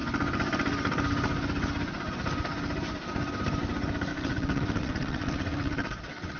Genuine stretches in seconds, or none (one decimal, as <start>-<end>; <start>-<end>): 0.0-4.1